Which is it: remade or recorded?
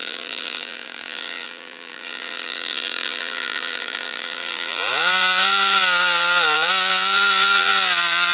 remade